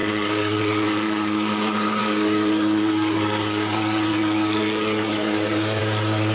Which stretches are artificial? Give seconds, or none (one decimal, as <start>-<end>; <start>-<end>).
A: 0.0-0.6; 2.0-5.8